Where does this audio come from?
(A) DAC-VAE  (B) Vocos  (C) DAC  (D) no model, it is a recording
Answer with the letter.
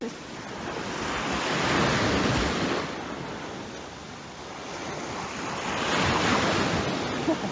D